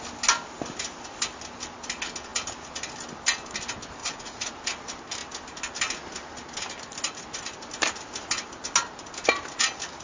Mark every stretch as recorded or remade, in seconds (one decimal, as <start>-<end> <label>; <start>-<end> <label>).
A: 0.0-4.0 recorded; 4.0-4.5 remade; 4.5-10.0 recorded